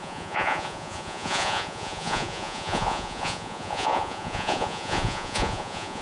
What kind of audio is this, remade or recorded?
remade